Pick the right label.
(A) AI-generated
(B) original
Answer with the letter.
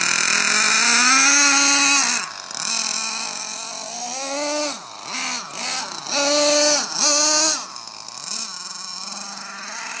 B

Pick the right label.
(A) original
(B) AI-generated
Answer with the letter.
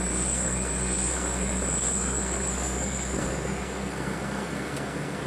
B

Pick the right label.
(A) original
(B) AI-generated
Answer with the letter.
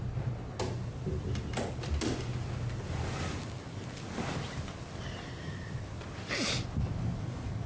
A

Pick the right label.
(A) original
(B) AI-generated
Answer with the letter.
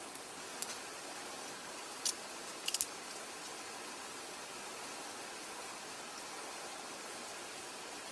A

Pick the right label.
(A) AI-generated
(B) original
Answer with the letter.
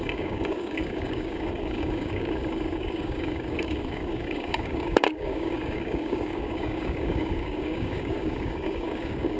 A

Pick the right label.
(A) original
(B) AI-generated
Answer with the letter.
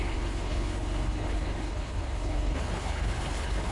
B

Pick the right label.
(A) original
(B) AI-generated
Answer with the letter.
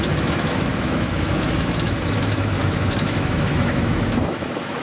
B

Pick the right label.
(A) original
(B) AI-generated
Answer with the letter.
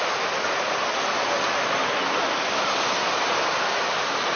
A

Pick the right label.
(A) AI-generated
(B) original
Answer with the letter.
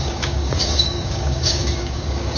A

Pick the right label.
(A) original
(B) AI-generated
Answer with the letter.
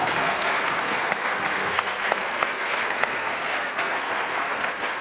B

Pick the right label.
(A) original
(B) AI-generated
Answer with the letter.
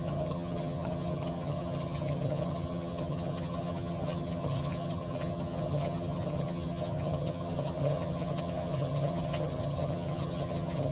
B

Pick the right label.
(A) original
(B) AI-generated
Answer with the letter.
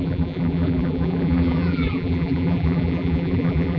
B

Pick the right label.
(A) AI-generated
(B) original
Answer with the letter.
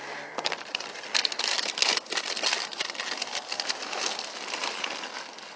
B